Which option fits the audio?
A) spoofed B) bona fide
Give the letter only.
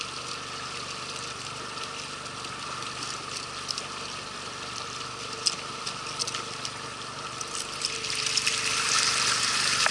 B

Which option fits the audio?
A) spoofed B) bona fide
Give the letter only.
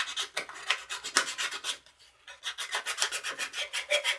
B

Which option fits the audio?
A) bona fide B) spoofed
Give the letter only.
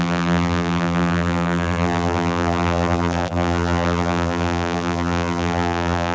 B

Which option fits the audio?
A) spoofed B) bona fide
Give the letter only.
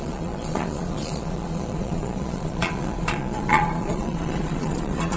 A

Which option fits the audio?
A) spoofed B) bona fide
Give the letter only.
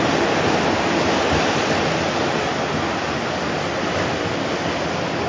B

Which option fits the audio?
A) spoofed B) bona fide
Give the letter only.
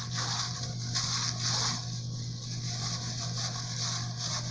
B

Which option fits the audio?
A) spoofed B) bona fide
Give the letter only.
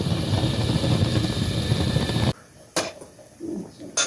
B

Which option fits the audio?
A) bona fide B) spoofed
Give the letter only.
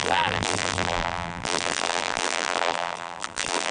B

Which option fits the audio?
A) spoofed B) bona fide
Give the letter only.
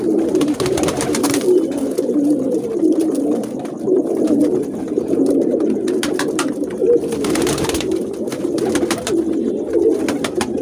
A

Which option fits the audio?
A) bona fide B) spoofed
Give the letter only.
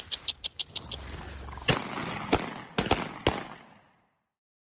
A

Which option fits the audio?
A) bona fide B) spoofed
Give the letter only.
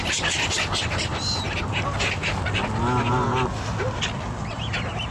A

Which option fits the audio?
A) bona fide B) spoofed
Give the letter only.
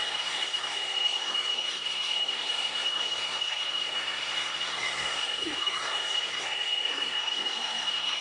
B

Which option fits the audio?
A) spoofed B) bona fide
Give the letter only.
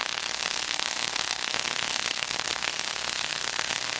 A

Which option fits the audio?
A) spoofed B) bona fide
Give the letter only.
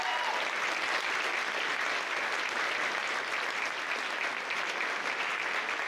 B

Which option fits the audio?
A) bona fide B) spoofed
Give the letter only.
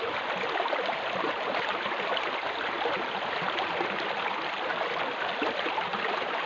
A